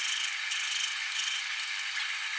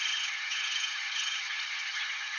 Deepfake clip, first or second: second